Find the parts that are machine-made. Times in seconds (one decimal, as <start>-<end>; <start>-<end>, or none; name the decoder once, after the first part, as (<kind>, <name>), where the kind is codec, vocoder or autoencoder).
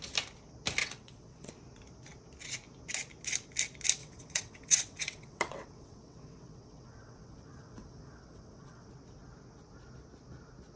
0.8-1.5 (vocoder, WaveNeXt); 4.0-8.9